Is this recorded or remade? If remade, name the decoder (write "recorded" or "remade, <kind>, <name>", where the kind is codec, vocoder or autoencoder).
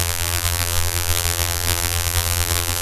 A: remade, vocoder, BigVGAN v2